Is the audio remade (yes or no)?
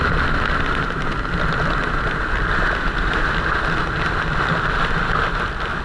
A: no